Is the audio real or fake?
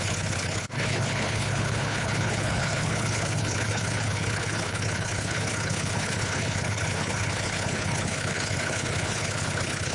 fake